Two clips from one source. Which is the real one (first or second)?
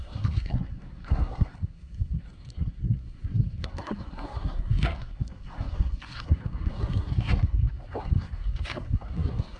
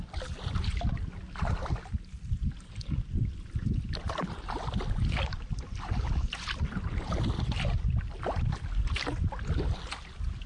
second